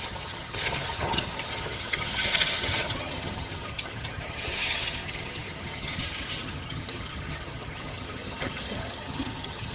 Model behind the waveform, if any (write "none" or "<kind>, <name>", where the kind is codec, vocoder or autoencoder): vocoder, HiFi-GAN